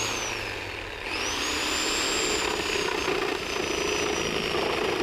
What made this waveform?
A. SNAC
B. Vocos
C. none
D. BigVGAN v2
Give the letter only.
C